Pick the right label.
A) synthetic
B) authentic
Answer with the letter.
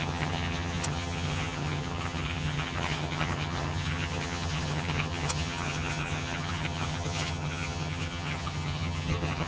A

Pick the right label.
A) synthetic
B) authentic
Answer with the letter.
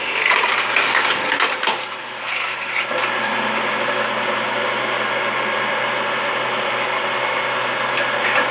B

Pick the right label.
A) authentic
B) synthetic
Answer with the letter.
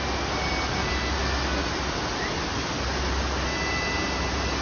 A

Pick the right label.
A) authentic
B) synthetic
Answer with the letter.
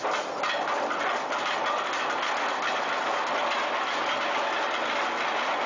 A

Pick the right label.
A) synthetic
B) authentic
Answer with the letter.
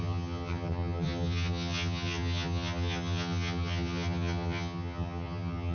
A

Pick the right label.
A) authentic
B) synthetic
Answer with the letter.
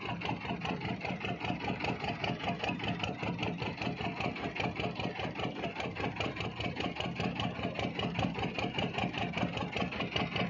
A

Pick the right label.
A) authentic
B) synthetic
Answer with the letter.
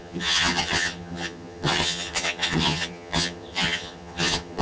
B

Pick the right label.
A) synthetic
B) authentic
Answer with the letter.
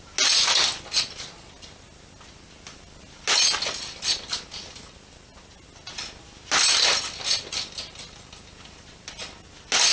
B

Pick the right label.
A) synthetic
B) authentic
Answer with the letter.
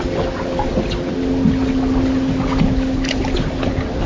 B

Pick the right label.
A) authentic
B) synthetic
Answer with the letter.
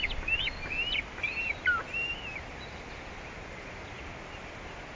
A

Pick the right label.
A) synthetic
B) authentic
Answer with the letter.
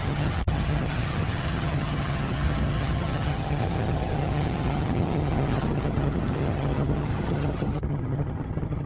A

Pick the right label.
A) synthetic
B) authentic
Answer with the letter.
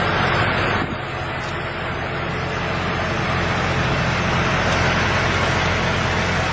B